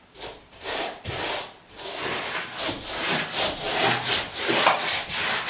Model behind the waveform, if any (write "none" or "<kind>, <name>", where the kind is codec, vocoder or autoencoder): none